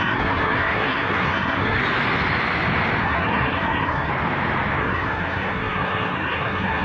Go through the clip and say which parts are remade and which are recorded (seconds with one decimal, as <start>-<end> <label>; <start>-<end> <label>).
0.0-1.8 remade; 1.8-3.0 recorded; 3.0-4.1 remade; 4.1-4.8 recorded; 4.8-6.8 remade